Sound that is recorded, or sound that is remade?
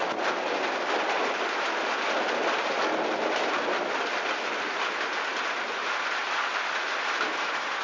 recorded